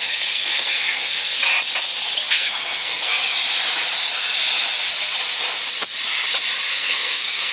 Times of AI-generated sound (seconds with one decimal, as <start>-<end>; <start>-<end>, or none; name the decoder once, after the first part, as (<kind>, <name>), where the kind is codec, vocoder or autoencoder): 0.0-1.5 (codec, SNAC); 2.3-3.3; 6.7-7.5